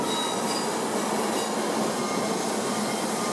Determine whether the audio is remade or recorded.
recorded